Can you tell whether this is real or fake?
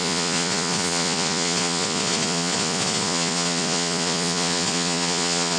fake